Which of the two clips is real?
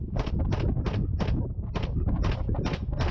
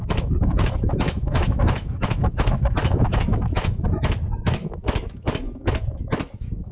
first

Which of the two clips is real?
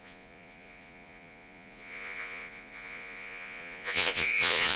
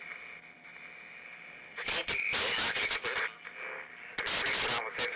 second